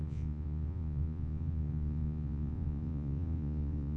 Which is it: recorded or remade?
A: remade